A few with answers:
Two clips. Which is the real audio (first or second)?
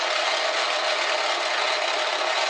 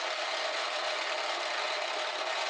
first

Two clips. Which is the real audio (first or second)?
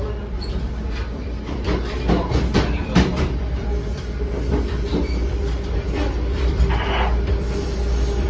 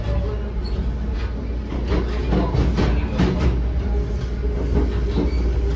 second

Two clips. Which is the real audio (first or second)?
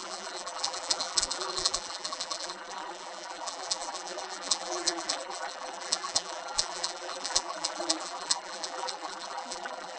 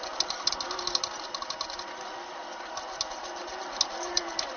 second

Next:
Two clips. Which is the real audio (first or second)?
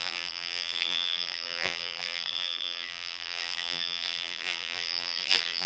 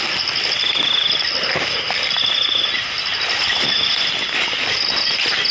second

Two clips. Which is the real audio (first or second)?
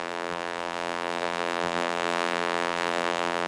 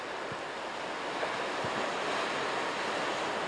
second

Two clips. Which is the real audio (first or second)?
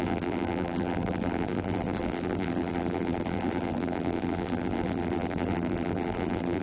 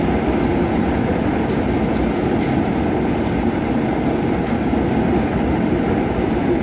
second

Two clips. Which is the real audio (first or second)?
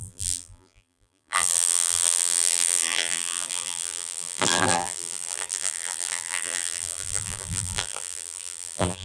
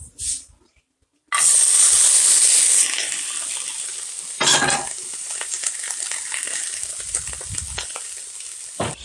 second